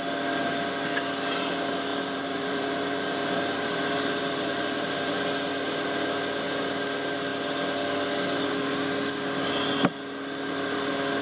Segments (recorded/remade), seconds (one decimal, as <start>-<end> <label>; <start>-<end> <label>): 0.0-1.9 recorded; 1.9-5.1 remade; 5.1-11.2 recorded